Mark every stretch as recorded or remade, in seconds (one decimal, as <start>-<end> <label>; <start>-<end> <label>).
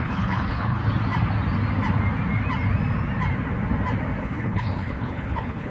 0.0-0.8 remade; 0.8-4.2 recorded; 4.2-5.7 remade